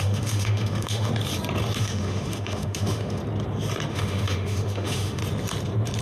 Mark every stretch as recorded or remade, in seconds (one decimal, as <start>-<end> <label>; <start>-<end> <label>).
0.0-1.1 remade; 1.1-1.8 recorded; 1.8-3.2 remade; 3.2-3.9 recorded; 3.9-5.2 remade; 5.2-6.0 recorded